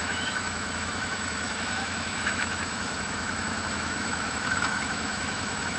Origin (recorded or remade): remade